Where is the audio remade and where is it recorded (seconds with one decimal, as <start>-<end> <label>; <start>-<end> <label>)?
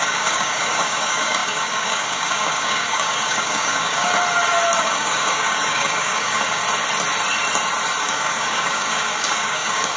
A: 0.0-4.1 remade; 4.1-4.8 recorded; 4.8-6.6 remade; 6.6-8.0 recorded; 8.0-10.0 remade